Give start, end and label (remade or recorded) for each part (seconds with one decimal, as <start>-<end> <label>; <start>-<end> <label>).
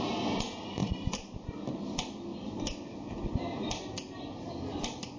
0.0-0.8 recorded; 0.8-1.5 remade; 1.5-2.3 recorded; 2.3-4.5 remade; 4.5-5.2 recorded